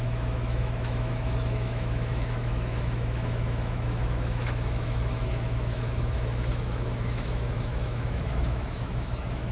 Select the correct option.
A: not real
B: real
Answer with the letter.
A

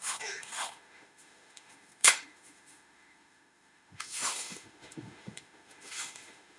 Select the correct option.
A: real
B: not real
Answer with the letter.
B